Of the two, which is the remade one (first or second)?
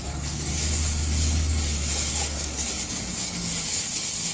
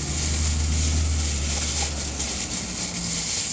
first